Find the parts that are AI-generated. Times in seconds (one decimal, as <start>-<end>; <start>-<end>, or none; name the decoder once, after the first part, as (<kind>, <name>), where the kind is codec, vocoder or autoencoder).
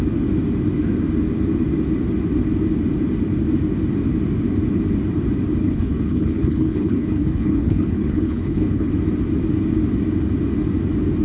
5.6-8.9 (codec, HILCodec)